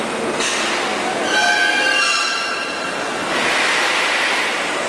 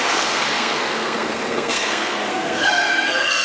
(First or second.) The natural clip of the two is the first